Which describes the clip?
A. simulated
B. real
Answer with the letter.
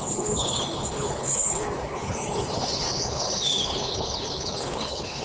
A